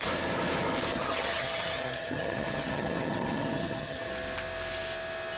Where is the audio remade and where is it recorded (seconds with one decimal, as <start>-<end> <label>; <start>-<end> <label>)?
0.0-0.9 recorded; 0.9-4.1 remade; 4.1-5.4 recorded